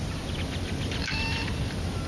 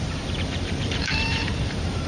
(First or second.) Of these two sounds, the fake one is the second